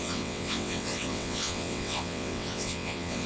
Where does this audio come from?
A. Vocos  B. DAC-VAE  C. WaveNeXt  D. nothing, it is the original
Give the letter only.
C